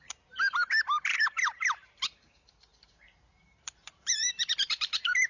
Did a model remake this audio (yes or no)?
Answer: yes